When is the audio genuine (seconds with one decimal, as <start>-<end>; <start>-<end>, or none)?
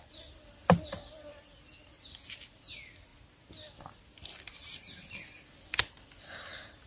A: 0.0-6.9